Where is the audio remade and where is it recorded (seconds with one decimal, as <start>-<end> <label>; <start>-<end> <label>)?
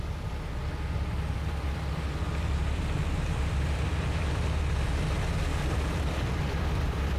0.0-7.2 remade